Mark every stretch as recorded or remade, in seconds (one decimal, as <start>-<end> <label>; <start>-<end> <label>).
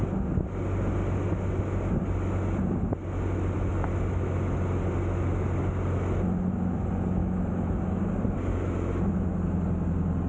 0.0-7.2 recorded; 7.2-8.1 remade; 8.1-10.3 recorded